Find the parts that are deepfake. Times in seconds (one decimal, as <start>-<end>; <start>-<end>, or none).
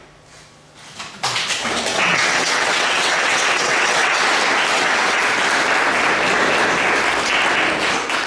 1.9-4.2; 4.7-5.2